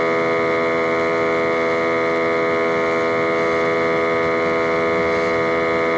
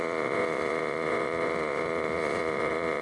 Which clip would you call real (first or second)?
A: first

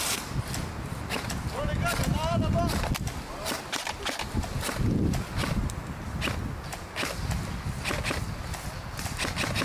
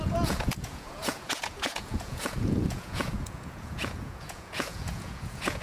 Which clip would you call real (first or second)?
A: first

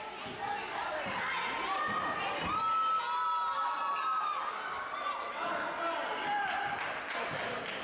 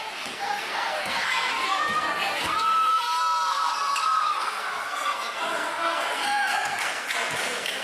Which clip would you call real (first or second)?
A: first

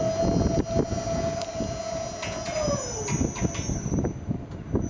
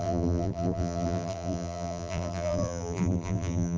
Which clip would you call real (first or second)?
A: first